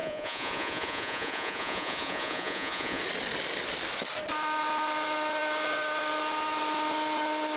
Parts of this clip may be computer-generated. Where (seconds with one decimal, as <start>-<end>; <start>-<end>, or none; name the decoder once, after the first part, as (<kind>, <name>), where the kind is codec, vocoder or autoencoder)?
0.0-3.0 (vocoder, Vocos)